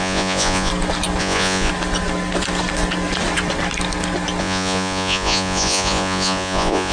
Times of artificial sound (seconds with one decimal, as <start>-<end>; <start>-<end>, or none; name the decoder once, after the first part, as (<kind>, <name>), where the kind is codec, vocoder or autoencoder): 0.0-0.7 (vocoder, Vocos); 1.2-1.7; 4.4-6.9

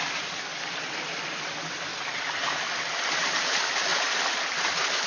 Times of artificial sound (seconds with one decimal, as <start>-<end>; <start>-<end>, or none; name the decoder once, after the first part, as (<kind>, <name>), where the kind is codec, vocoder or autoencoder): none

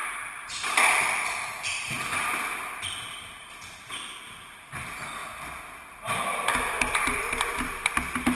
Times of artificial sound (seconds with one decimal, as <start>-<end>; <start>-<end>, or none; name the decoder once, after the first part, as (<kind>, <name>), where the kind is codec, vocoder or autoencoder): none

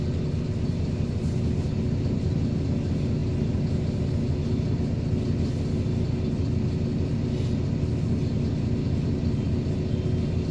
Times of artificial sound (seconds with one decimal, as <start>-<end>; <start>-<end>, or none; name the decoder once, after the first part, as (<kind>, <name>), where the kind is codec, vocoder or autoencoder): none

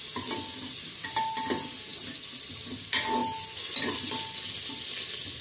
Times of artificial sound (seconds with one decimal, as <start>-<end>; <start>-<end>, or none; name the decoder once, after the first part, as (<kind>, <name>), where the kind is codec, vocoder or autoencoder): none